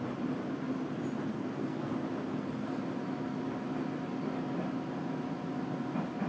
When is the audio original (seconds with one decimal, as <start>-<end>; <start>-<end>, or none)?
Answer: 0.0-1.3; 1.9-2.3; 2.8-6.3